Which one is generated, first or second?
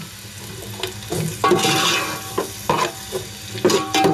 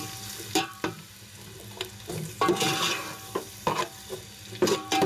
second